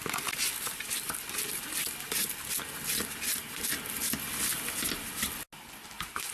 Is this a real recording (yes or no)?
yes